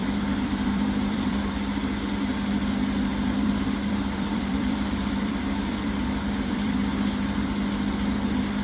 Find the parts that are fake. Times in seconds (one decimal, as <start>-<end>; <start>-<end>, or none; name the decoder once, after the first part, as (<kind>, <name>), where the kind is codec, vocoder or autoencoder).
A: 0.0-1.5 (vocoder, BigVGAN v2); 3.1-6.8